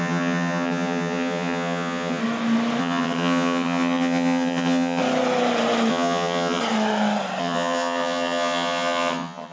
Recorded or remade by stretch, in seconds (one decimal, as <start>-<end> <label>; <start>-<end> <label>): 0.0-2.2 remade; 2.2-2.8 recorded; 2.8-5.0 remade; 5.0-5.9 recorded; 5.9-6.6 remade; 6.6-7.4 recorded; 7.4-9.5 remade

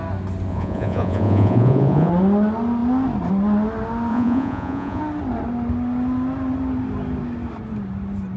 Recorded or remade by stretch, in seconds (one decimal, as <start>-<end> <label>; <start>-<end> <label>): 0.0-0.5 recorded; 0.5-2.1 remade; 2.1-4.1 recorded; 4.1-5.0 remade; 5.0-8.4 recorded

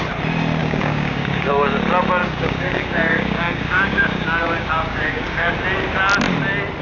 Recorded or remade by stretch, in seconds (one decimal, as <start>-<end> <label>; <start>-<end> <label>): 0.0-0.6 recorded; 0.6-1.5 remade; 1.5-2.2 recorded; 2.2-5.5 remade; 5.5-6.8 recorded

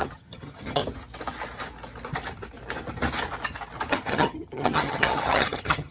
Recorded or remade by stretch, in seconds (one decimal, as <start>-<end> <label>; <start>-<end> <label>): 0.0-0.8 remade; 0.8-3.9 recorded; 3.9-5.9 remade

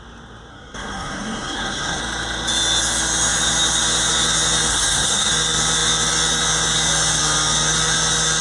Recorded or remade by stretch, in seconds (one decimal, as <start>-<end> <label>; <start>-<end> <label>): 0.0-0.5 recorded; 0.5-2.0 remade; 2.0-4.7 recorded; 4.7-5.3 remade; 5.3-8.4 recorded

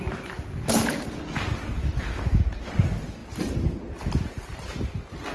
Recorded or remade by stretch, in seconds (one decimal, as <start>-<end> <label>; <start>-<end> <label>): 0.0-1.8 recorded; 1.8-2.7 remade; 2.7-5.3 recorded

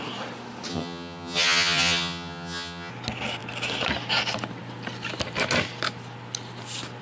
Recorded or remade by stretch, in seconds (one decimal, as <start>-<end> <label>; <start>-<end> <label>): 0.0-0.7 recorded; 0.7-2.9 remade; 2.9-7.0 recorded